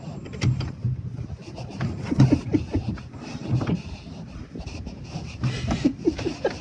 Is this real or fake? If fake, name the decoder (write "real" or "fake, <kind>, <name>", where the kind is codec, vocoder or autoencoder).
real